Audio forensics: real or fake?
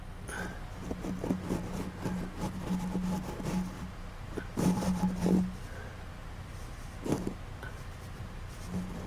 real